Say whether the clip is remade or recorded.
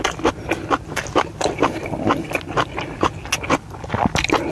recorded